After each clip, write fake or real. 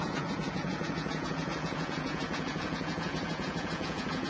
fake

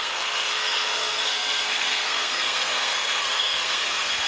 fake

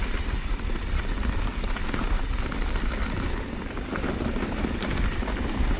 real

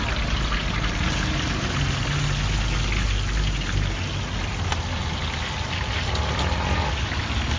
real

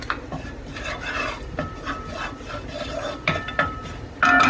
real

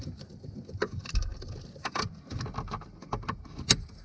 real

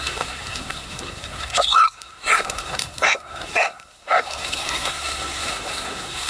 fake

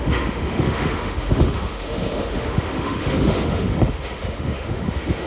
fake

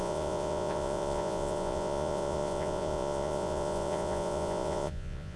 fake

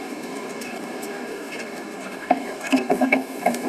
fake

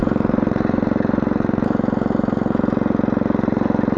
real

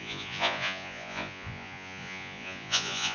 fake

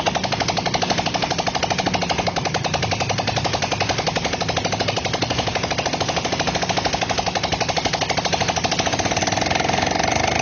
real